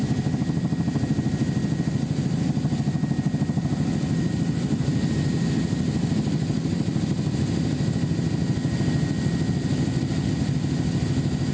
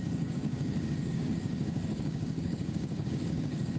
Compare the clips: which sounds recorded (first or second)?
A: first